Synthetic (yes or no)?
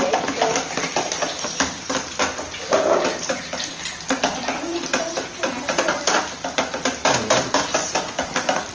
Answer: no